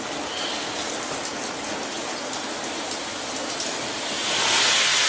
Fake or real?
real